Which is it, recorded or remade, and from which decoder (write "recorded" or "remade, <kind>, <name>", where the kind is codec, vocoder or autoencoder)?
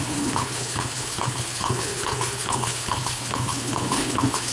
remade, codec, HILCodec